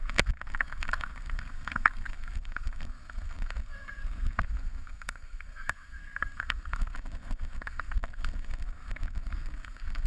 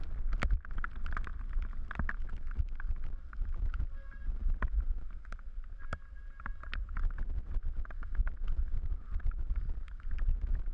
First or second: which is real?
second